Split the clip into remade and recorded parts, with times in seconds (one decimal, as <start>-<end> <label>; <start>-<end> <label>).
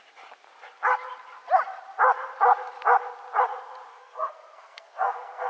0.0-3.9 recorded; 3.9-5.5 remade